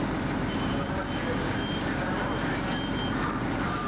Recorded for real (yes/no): yes